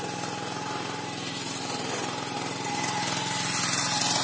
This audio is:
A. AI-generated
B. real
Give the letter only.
B